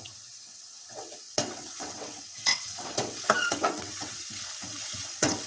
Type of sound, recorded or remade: remade